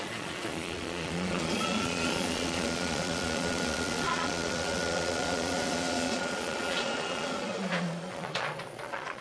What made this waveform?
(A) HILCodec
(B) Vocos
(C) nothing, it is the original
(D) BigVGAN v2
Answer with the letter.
B